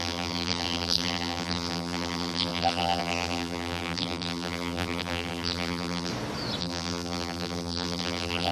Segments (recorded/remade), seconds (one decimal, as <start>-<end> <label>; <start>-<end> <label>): 0.0-6.1 remade; 6.1-6.6 recorded; 6.6-8.5 remade